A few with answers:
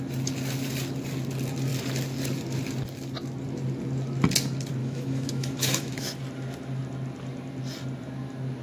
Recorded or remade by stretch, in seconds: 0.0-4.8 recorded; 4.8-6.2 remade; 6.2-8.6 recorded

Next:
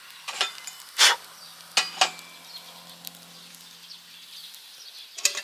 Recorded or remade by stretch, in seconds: 0.0-5.4 recorded

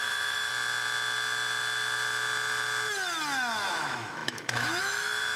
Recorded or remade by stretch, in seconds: 0.0-0.5 remade; 0.5-3.7 recorded; 3.7-5.4 remade

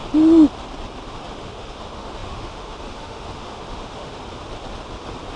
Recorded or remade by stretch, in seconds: 0.0-1.1 recorded; 1.1-4.2 remade; 4.2-5.4 recorded